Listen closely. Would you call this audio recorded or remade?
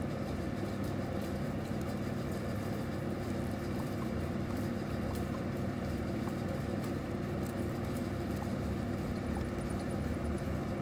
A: remade